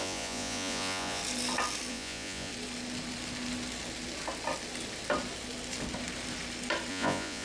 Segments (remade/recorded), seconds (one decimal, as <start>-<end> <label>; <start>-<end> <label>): 0.0-1.2 remade; 1.2-1.9 recorded; 1.9-2.5 remade; 2.5-6.9 recorded; 6.9-7.4 remade